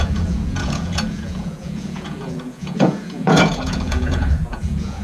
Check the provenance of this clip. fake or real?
fake